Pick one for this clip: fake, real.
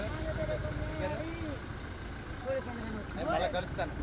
real